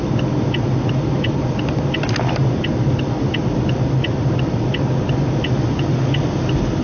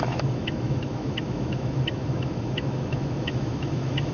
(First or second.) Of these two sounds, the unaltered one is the first